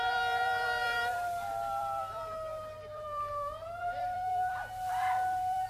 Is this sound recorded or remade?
remade